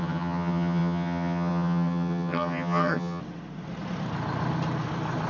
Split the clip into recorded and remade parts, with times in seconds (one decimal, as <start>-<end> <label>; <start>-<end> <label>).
0.0-3.2 remade; 3.2-5.3 recorded